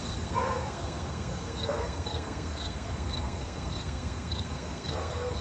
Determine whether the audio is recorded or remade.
remade